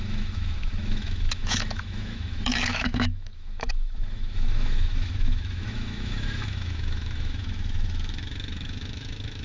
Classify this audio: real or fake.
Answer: fake